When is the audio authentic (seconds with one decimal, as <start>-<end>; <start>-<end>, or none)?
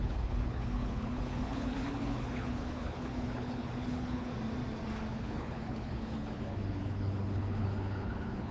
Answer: 4.3-5.1